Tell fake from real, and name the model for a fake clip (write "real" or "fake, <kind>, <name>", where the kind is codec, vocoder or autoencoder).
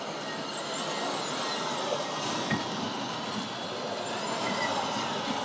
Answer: real